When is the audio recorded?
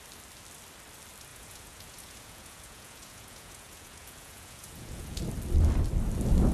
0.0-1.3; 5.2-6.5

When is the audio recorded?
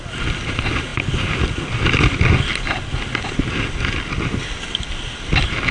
0.0-5.7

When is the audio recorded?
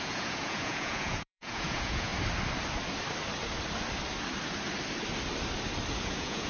2.1-6.0